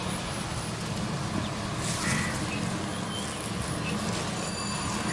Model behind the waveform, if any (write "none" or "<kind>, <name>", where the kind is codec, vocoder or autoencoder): none